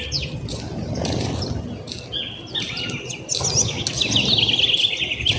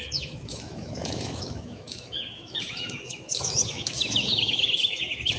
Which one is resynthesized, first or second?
second